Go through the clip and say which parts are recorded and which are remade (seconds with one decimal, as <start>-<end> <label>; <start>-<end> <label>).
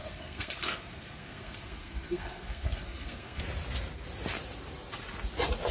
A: 0.0-3.4 remade; 3.4-5.7 recorded